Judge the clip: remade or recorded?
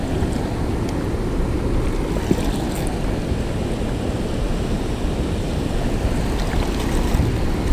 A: recorded